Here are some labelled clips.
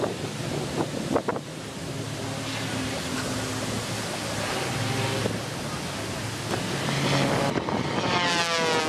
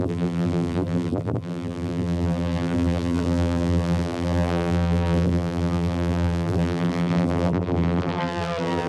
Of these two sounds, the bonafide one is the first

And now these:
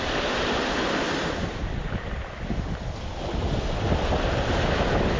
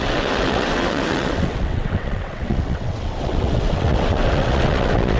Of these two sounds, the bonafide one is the first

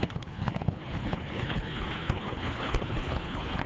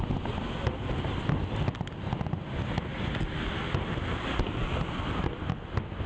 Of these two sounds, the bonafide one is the second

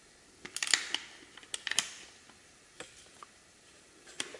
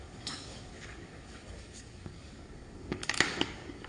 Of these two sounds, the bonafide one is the first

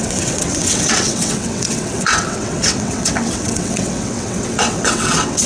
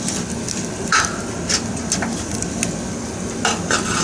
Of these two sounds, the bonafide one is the second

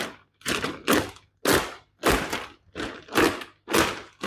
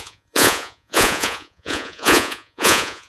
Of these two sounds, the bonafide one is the first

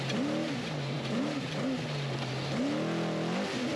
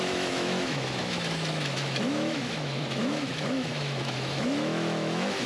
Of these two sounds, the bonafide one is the first